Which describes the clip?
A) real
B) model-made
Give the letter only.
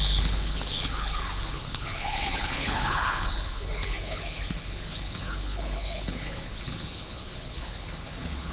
B